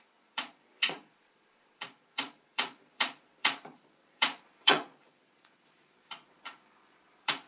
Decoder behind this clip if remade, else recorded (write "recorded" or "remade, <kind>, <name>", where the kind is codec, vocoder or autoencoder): remade, vocoder, Vocos